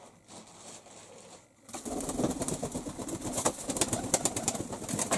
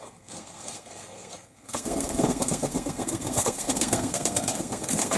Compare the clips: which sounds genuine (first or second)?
first